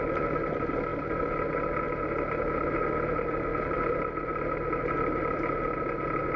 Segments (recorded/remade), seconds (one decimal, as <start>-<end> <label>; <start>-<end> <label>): 0.0-6.4 recorded

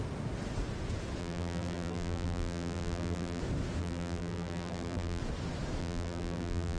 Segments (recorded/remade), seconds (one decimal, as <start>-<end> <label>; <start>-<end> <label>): 0.0-1.2 recorded; 1.2-3.4 remade; 3.4-3.8 recorded; 3.8-5.2 remade; 5.2-5.8 recorded; 5.8-6.8 remade

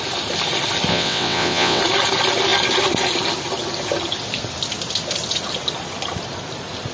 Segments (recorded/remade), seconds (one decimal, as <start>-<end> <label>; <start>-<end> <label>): 0.0-0.9 recorded; 0.9-1.8 remade; 1.8-6.9 recorded